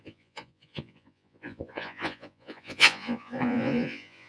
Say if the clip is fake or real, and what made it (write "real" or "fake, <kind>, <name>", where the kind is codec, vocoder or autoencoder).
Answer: fake, vocoder, Vocos